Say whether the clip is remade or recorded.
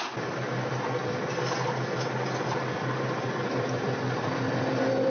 recorded